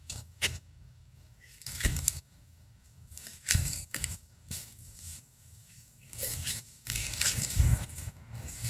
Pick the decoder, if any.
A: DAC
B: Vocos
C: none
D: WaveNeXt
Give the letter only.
A